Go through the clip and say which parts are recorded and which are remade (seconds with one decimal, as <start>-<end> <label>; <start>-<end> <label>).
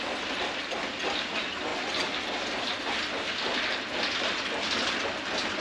0.0-5.6 recorded